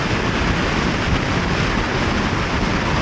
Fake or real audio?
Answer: real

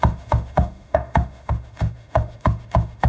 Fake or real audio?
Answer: fake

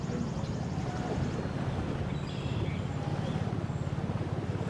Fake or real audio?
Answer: real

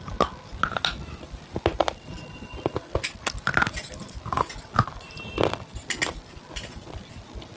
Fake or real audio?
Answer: real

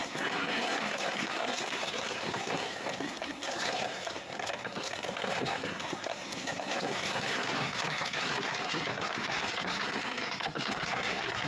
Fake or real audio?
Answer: fake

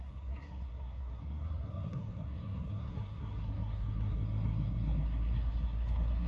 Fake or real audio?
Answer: fake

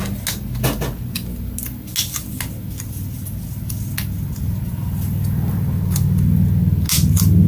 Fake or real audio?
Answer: real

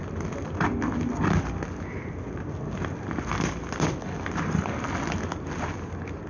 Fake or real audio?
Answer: real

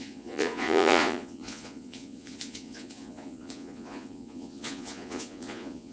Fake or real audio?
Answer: fake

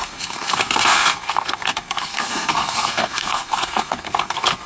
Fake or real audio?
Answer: fake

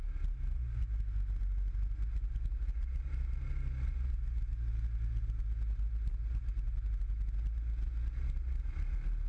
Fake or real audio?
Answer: real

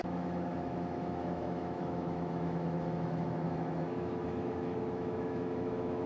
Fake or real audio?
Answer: fake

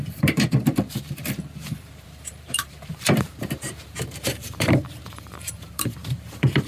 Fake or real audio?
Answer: fake